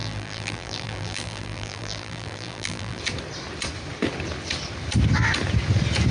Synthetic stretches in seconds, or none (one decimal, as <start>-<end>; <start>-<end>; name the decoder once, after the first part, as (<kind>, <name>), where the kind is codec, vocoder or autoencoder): 0.0-3.0 (vocoder, BigVGAN v2)